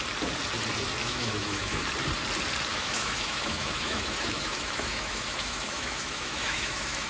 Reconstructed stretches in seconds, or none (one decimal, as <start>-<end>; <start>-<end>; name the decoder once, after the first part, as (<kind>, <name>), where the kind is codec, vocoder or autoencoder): 1.0-1.8 (autoencoder, DAC-VAE); 2.7-7.1